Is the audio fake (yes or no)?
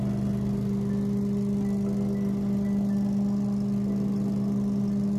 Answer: no